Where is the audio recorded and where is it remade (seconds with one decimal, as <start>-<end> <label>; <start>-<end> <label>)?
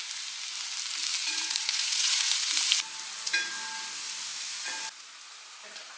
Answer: 0.0-1.2 recorded; 1.2-2.5 remade; 2.5-6.0 recorded